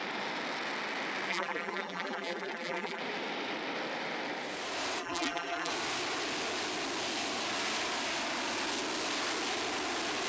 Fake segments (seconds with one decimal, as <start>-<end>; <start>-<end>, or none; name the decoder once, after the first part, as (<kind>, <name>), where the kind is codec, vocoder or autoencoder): 1.3-3.0 (vocoder, BigVGAN v2); 5.0-5.7